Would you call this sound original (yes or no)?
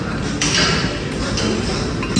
yes